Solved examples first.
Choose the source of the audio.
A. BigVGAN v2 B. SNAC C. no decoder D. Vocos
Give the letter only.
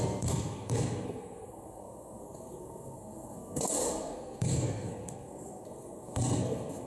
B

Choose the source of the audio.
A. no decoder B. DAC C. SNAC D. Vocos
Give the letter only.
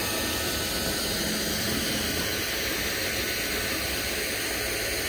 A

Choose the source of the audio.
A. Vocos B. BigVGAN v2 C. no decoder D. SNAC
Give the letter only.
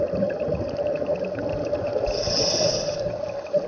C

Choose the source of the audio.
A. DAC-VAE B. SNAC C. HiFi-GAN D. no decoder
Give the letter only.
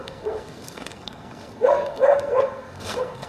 B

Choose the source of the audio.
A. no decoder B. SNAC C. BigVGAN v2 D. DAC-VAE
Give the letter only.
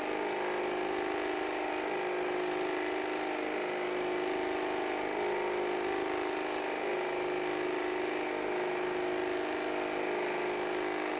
A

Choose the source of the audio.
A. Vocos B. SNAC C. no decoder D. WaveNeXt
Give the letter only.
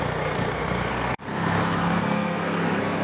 B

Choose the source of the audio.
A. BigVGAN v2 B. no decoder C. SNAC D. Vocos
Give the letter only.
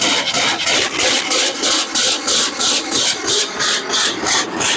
B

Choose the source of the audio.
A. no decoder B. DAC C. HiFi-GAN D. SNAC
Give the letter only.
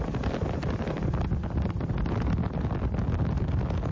A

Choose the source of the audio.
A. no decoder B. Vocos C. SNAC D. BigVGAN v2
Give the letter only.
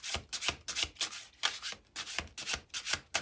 A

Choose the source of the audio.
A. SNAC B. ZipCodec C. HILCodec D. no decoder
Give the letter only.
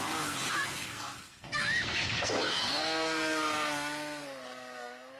A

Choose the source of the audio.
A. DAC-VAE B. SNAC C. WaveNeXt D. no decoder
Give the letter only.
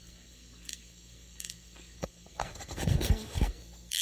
B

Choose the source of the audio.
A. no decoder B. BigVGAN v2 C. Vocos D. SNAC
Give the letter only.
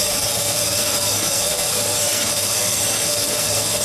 D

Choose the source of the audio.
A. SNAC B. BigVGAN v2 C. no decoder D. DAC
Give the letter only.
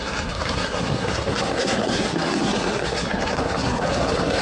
A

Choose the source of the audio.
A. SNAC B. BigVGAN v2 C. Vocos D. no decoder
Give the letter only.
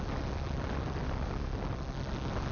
D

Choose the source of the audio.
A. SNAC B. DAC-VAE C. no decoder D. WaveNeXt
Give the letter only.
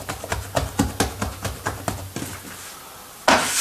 C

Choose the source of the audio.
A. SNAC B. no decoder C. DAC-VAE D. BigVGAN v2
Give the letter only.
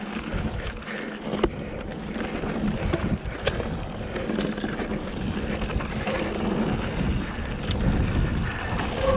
B